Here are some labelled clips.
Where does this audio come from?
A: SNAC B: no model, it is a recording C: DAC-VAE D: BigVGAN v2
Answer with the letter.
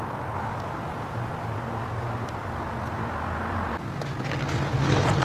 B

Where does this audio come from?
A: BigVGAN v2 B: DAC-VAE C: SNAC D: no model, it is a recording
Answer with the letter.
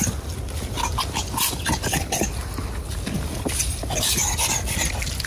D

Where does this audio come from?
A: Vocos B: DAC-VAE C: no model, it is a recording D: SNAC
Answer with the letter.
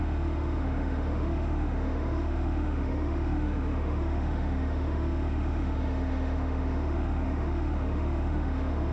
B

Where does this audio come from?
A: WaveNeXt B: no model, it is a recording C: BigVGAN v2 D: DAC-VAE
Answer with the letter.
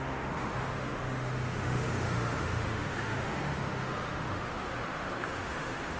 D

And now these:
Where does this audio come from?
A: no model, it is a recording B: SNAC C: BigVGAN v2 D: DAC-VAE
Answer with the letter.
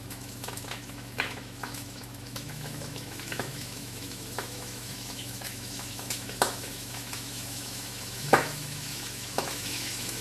D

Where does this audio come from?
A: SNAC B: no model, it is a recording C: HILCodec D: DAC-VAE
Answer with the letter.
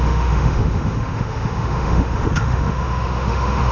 D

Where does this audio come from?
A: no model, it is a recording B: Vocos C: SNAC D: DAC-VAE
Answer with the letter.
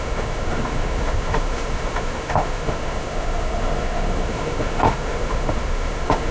D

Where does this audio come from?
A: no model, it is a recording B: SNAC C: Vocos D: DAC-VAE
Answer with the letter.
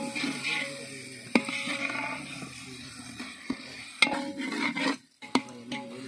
A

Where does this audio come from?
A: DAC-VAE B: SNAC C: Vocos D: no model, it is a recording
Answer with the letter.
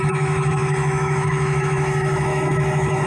A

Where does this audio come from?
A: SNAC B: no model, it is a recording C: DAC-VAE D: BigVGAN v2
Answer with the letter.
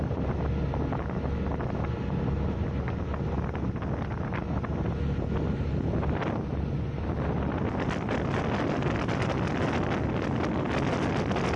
B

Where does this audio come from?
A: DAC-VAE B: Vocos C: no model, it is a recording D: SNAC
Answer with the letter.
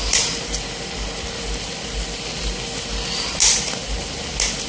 C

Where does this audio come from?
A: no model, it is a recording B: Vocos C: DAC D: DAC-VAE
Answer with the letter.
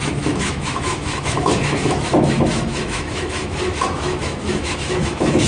D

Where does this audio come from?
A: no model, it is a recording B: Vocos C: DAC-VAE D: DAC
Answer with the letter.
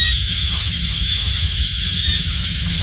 C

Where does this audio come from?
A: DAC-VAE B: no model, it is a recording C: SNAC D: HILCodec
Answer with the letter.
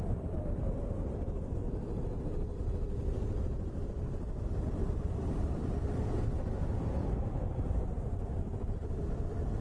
B